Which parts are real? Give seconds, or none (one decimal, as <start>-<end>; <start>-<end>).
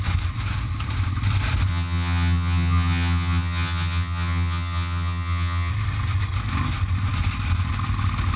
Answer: 0.0-1.7; 5.7-8.4